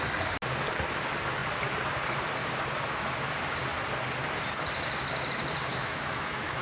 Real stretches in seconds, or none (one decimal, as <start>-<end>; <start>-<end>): 0.0-5.7